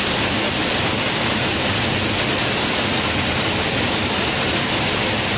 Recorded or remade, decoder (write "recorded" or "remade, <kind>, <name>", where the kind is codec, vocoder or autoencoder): recorded